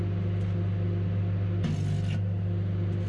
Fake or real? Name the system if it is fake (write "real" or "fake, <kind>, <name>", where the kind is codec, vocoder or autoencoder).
real